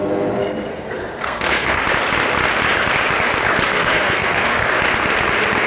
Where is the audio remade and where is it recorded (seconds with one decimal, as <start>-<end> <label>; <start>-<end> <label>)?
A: 0.0-0.7 recorded; 0.7-1.8 remade; 1.8-3.7 recorded; 3.7-4.7 remade; 4.7-5.7 recorded